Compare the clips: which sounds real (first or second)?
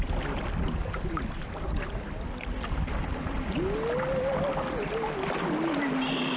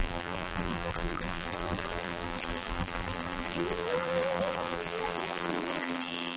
first